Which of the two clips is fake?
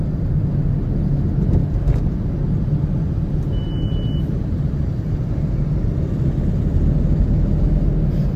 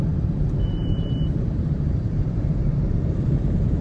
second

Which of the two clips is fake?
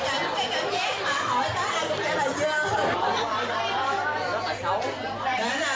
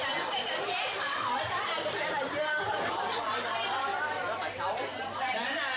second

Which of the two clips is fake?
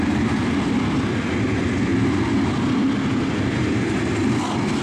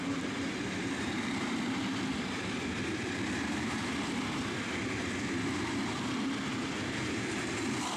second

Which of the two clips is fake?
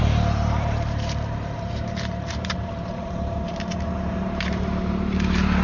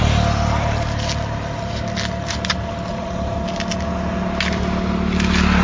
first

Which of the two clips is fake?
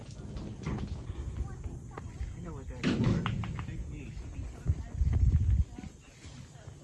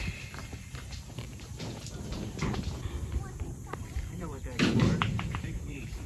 second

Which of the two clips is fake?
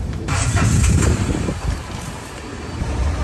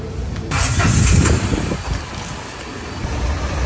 first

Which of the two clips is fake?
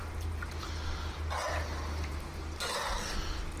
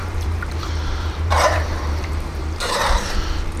second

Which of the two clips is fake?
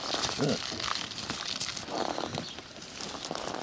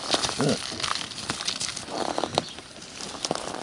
second